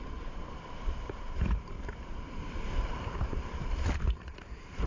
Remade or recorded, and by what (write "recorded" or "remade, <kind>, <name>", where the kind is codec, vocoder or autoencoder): remade, vocoder, BigVGAN v2